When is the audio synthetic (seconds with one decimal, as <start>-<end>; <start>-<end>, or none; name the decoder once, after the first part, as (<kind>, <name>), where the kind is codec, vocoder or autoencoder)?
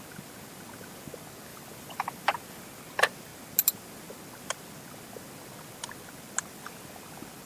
1.5-2.8 (vocoder, BigVGAN v2)